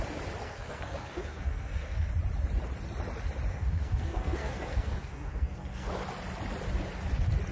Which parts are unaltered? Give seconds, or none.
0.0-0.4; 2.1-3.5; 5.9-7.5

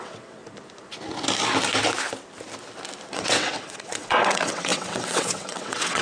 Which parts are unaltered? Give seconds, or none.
0.4-3.1

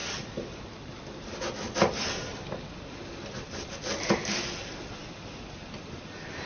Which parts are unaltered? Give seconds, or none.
0.0-6.5

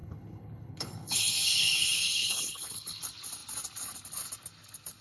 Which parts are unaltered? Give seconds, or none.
3.0-5.0

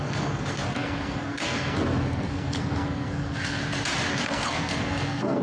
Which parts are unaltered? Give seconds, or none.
3.6-4.1

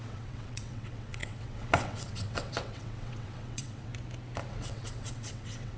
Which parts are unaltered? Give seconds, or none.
3.9-4.5

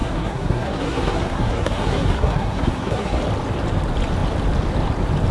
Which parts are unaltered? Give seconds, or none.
3.2-5.3

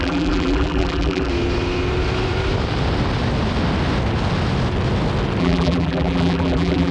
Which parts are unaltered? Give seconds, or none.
1.3-5.4